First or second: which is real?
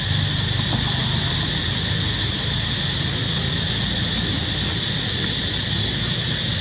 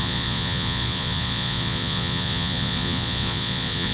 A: first